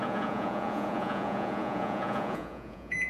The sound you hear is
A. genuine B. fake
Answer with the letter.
B